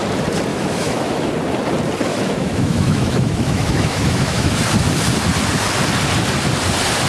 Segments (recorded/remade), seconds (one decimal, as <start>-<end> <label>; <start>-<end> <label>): 0.0-0.5 recorded; 0.5-1.3 remade; 1.3-2.1 recorded; 2.1-4.6 remade; 4.6-7.1 recorded